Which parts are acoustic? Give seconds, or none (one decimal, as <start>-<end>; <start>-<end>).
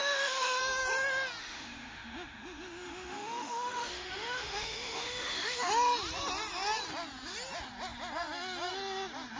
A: 0.6-1.4; 5.7-9.4